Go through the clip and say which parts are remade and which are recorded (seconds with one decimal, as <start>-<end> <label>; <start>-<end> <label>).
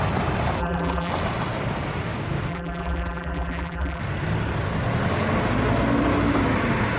0.0-0.6 recorded; 0.6-1.1 remade; 1.1-2.5 recorded; 2.5-4.0 remade; 4.0-7.0 recorded